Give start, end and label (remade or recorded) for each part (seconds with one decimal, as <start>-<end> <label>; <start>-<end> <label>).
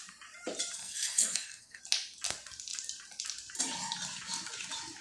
0.0-0.8 recorded; 0.8-1.8 remade; 1.8-5.0 recorded